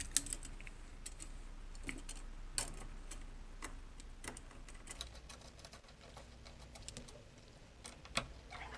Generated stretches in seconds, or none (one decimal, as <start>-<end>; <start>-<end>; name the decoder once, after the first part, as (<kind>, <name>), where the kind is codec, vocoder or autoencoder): none